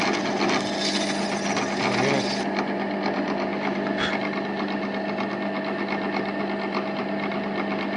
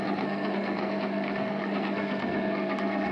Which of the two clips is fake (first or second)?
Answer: second